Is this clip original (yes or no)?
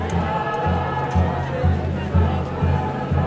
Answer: yes